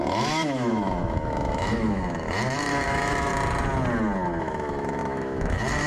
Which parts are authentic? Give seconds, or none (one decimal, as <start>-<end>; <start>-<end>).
3.3-4.4